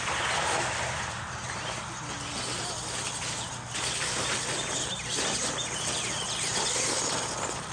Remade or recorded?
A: recorded